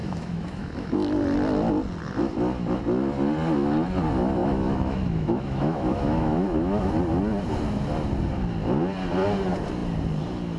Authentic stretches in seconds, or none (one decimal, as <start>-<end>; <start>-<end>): 0.9-4.4; 6.9-10.6